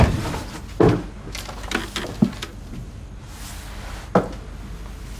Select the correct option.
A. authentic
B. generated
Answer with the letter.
A